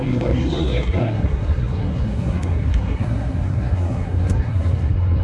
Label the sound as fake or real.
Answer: fake